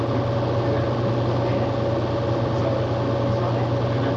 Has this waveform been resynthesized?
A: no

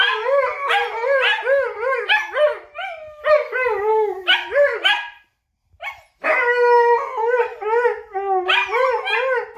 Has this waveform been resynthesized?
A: no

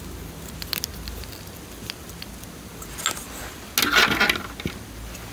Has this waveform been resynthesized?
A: no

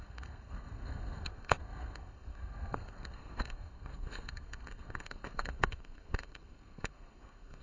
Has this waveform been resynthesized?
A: yes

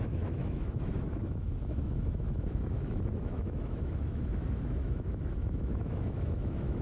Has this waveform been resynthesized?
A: yes